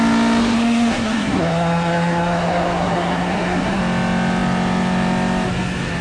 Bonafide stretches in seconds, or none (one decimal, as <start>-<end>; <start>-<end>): 0.0-0.4; 3.8-6.0